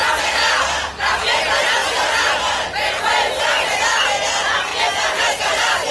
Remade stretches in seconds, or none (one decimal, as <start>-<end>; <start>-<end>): none